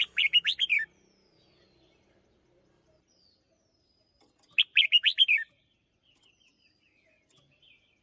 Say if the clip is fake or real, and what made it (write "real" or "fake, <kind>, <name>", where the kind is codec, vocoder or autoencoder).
real